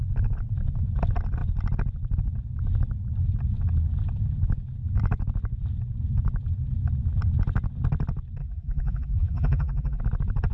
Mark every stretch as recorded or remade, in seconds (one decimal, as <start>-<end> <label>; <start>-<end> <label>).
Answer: 0.0-8.4 recorded; 8.4-10.0 remade; 10.0-10.5 recorded